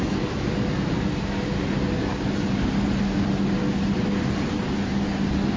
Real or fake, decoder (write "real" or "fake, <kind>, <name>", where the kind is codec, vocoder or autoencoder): real